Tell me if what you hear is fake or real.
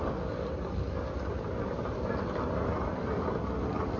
real